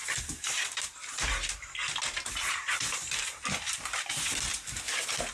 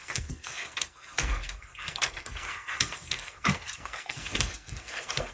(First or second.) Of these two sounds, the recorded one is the first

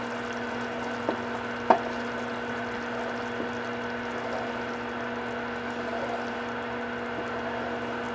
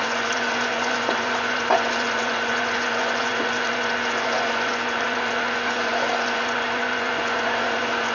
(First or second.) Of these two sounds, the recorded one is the first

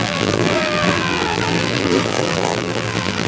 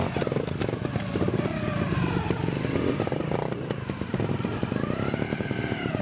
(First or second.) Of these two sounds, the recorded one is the second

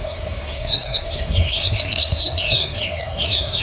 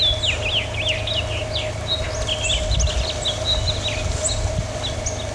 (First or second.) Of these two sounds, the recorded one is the second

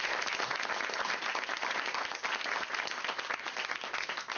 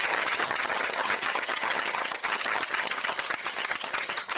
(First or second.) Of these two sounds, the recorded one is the first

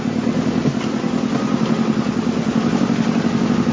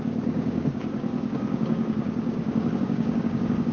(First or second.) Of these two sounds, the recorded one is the first